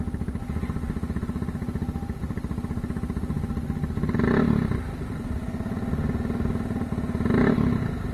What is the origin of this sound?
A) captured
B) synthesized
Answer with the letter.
A